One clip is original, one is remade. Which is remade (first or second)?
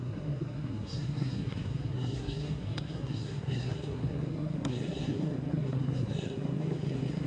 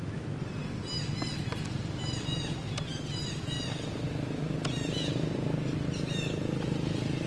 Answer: first